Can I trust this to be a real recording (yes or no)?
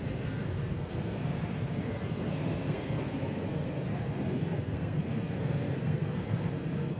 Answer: no